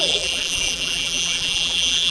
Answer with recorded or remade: remade